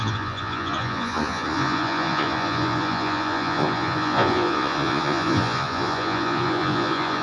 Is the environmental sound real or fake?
fake